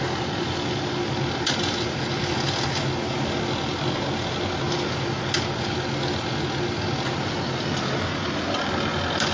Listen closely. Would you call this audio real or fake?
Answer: real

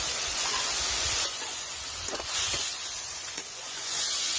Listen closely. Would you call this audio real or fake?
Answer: fake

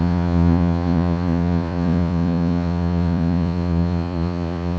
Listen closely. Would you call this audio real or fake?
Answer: fake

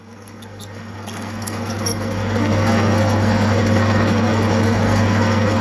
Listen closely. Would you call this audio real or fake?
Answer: fake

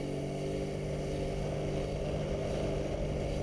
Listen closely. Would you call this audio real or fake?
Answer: real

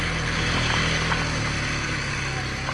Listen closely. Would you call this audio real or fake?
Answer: real